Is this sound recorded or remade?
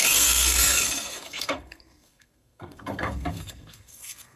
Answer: remade